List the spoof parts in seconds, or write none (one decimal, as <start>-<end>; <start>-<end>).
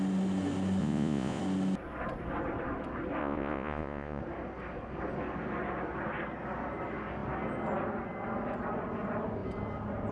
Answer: 0.8-1.4; 3.2-4.2